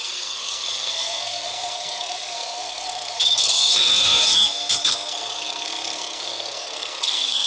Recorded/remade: remade